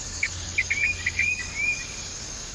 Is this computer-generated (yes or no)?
yes